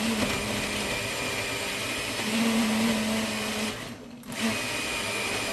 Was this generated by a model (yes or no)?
no